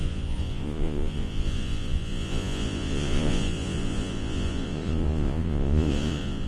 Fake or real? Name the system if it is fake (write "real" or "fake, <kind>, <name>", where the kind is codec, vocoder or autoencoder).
fake, vocoder, Vocos